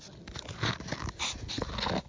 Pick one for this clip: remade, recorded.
recorded